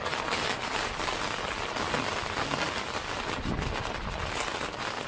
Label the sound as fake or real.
real